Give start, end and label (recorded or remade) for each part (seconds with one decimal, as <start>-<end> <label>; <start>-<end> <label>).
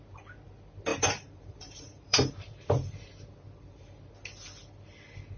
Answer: 0.0-0.9 recorded; 0.9-4.1 remade; 4.1-5.4 recorded